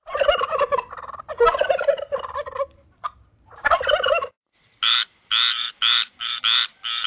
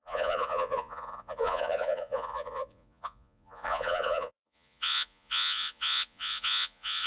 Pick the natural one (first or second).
first